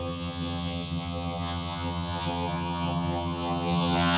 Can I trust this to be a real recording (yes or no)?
no